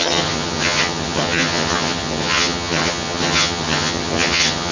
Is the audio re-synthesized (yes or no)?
yes